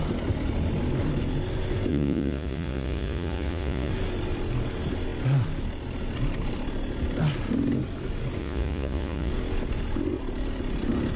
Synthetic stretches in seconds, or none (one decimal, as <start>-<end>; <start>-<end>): 1.9-3.9; 8.4-9.3